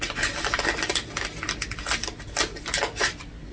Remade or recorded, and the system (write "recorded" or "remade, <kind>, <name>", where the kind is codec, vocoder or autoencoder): recorded